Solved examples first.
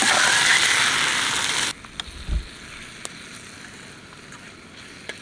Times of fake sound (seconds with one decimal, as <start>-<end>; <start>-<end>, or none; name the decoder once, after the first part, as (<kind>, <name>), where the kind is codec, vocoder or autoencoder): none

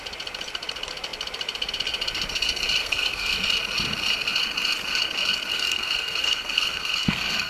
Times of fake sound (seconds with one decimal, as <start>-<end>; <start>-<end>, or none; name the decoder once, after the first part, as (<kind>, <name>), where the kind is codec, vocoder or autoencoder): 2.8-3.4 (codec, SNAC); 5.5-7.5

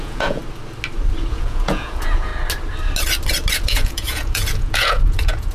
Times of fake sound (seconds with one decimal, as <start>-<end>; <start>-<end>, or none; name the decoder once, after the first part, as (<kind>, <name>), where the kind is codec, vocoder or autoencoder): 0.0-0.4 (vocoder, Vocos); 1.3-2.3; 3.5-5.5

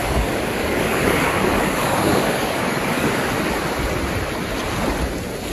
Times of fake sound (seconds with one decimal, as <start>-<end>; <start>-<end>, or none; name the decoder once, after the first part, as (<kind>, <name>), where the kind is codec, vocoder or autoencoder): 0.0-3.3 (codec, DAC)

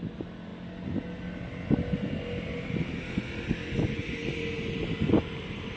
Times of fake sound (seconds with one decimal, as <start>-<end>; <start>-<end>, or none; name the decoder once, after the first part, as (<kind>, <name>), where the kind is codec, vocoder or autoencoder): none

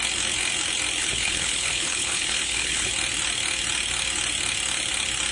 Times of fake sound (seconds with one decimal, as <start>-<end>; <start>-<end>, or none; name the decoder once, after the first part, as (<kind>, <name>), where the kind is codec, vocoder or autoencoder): 1.0-2.9 (codec, HILCodec)

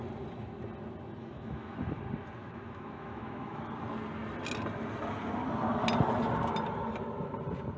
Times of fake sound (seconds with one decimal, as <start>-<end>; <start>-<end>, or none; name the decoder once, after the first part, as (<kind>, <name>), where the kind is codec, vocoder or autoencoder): 1.2-2.0 (autoencoder, DAC-VAE); 2.4-3.7

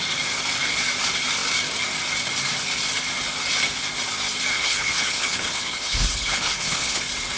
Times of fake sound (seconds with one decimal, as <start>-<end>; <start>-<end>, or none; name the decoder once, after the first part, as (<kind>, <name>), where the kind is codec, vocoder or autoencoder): 4.5-7.0 (codec, HILCodec)